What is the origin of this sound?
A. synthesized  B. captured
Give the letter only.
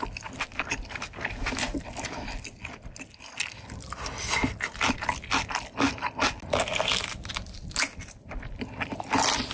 B